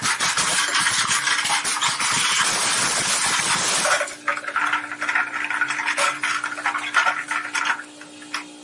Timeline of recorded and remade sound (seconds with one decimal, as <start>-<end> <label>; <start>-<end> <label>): 0.0-8.6 recorded